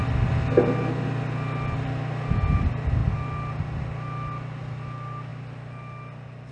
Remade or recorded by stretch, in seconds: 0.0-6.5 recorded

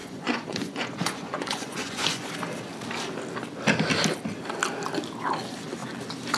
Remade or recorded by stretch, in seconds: 0.0-2.3 remade; 2.3-6.4 recorded

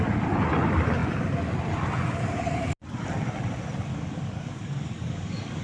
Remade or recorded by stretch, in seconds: 0.0-3.9 recorded; 3.9-5.6 remade

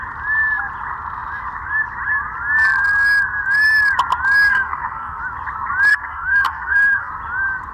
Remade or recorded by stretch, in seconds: 0.0-4.5 recorded; 4.5-5.2 remade; 5.2-5.9 recorded; 5.9-7.1 remade; 7.1-7.7 recorded

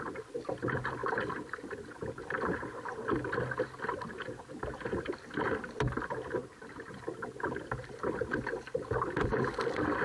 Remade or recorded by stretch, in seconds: 0.0-10.0 recorded